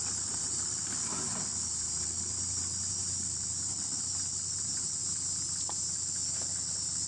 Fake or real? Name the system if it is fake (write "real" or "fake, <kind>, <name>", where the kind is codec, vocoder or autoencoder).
real